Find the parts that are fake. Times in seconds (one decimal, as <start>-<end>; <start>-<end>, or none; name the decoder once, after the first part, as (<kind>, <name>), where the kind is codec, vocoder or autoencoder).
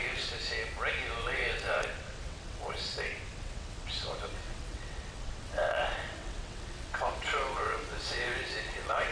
0.0-0.4 (vocoder, WaveNeXt); 1.2-9.1